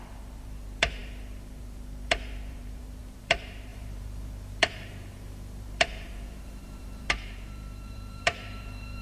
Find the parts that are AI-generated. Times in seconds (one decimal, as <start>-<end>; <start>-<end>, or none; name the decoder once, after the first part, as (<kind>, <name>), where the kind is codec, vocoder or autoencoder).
0.0-9.0 (vocoder, BigVGAN v2)